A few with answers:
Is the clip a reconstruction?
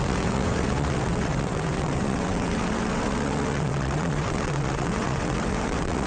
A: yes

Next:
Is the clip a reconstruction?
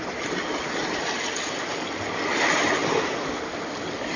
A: no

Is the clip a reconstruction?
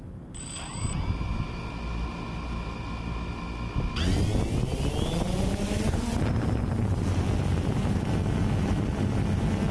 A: no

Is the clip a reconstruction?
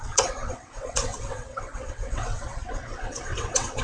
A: yes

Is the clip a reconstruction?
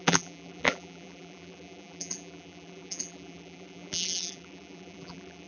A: yes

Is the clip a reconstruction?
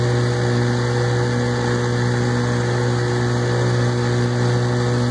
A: no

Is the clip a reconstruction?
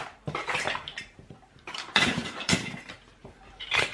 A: yes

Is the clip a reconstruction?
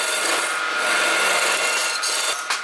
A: no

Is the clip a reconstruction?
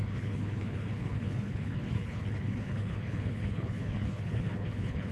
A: yes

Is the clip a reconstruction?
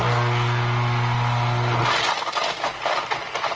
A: no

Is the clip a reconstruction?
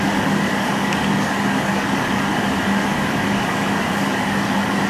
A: yes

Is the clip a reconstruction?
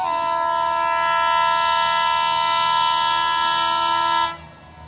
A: no